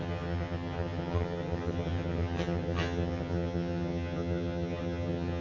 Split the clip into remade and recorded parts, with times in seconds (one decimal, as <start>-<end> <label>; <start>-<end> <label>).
0.0-5.4 remade